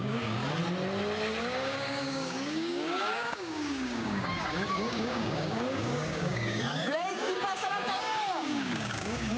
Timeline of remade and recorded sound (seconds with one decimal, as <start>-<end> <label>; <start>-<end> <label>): 0.0-0.4 remade; 0.4-1.4 recorded; 1.4-9.4 remade